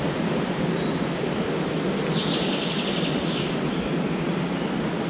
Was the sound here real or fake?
real